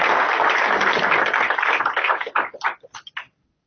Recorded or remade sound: recorded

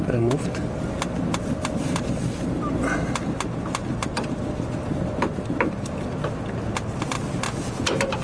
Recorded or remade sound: recorded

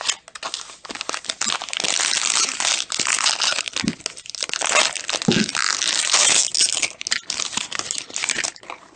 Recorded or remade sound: recorded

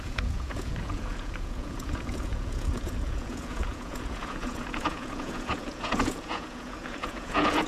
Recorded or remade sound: remade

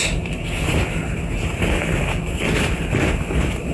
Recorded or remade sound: recorded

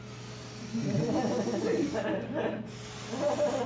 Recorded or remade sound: recorded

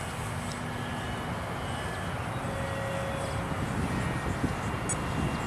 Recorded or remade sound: recorded